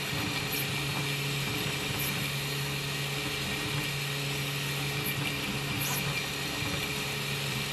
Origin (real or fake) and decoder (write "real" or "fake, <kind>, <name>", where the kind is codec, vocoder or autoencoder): real